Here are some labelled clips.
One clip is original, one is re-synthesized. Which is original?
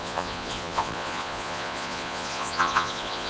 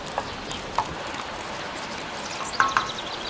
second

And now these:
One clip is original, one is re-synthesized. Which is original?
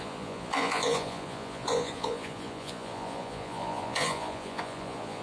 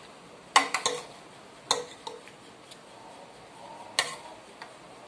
second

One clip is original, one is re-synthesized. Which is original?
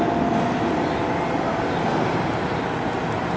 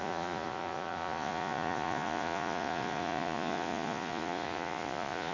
first